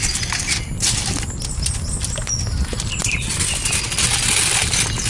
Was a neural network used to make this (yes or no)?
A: no